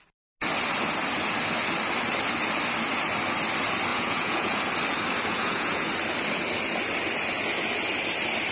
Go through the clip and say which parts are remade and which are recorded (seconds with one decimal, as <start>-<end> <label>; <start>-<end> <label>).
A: 0.0-3.9 recorded; 3.9-4.6 remade; 4.6-5.3 recorded; 5.3-5.9 remade; 5.9-8.5 recorded